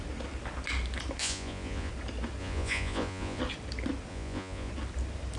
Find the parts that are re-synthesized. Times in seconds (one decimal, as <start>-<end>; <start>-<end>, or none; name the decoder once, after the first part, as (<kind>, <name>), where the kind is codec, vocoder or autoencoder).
1.2-1.9 (vocoder, Vocos); 2.4-3.4; 4.1-4.7